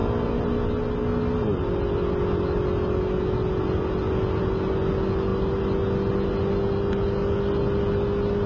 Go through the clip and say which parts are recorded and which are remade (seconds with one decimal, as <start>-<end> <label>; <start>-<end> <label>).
0.0-8.5 recorded

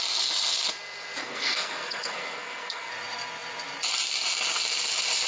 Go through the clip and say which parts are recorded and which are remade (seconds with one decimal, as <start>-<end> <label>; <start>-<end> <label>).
0.0-1.2 recorded; 1.2-2.9 remade; 2.9-5.3 recorded